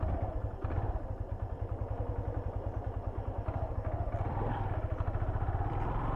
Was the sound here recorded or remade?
remade